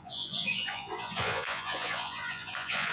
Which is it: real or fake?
fake